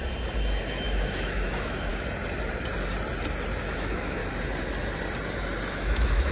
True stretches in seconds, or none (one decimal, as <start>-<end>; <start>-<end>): 0.0-0.7; 1.9-3.7; 4.2-5.7